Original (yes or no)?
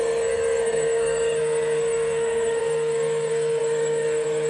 no